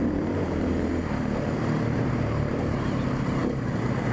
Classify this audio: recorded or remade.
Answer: remade